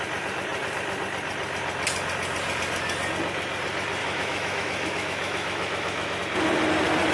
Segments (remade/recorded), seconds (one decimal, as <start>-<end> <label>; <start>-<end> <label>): 0.0-4.0 recorded; 4.0-6.2 remade; 6.2-7.1 recorded